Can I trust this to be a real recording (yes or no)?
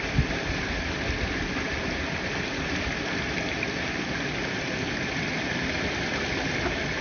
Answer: yes